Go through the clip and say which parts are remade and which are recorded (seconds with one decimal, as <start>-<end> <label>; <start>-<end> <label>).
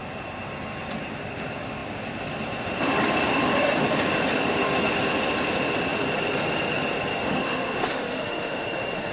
0.0-7.1 recorded; 7.1-9.1 remade